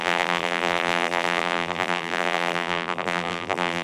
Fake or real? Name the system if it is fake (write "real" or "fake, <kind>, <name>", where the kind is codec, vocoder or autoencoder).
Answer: fake, vocoder, BigVGAN v2